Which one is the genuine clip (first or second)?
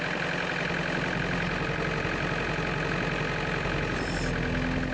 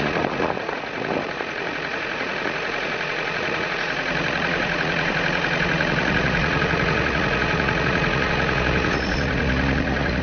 first